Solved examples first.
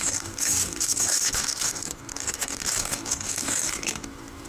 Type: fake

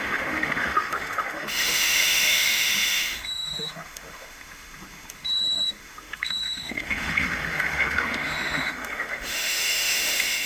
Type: fake